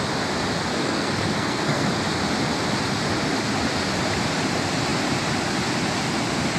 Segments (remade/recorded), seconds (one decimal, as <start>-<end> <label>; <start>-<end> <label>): 0.0-0.7 recorded; 0.7-1.9 remade; 1.9-6.6 recorded